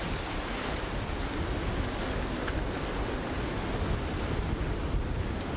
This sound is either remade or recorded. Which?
recorded